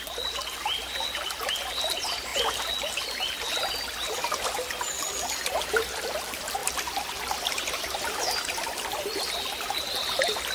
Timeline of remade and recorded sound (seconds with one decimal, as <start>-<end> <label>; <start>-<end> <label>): 0.0-2.3 remade; 2.3-4.8 recorded; 4.8-6.6 remade; 6.6-8.5 recorded; 8.5-10.5 remade